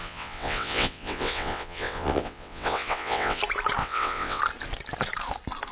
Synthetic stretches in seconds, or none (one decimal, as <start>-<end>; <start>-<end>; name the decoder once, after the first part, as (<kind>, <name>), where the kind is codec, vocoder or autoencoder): 0.0-3.4 (vocoder, WaveNeXt); 3.8-4.4